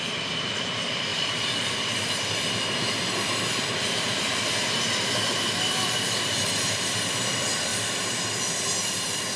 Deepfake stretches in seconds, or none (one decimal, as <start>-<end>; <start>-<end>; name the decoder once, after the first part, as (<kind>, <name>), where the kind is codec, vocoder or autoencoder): 0.0-7.7 (vocoder, BigVGAN v2); 8.8-9.4